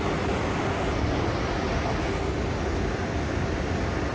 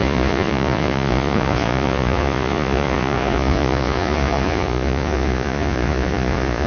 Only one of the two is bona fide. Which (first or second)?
first